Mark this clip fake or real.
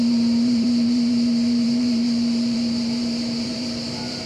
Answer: fake